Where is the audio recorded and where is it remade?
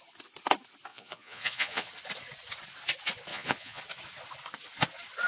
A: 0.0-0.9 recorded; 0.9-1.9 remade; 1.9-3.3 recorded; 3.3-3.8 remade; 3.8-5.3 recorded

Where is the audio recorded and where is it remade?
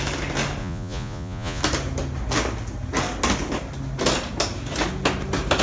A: 0.0-0.6 recorded; 0.6-1.6 remade; 1.6-5.6 recorded